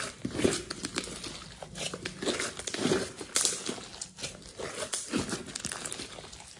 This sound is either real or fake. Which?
real